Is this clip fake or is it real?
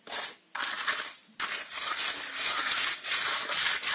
real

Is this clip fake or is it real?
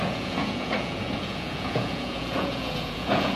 fake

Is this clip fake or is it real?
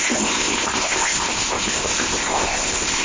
fake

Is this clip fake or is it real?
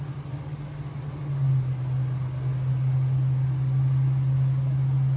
real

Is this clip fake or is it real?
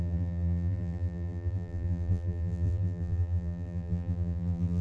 fake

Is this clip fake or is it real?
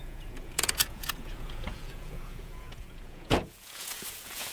fake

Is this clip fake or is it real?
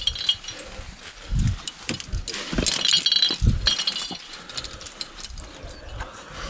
real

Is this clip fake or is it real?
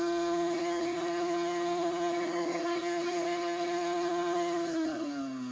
fake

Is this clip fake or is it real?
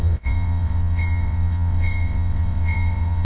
fake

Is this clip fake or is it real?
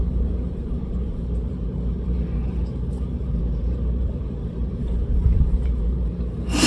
fake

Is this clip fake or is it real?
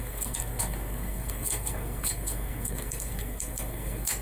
fake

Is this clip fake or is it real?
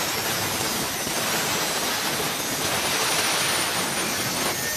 real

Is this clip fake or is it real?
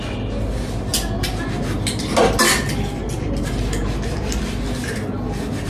real